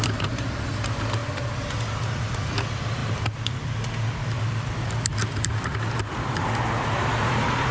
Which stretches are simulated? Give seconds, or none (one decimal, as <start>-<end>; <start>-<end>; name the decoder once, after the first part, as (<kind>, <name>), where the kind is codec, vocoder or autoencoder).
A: none